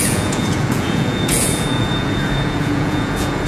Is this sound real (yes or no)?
no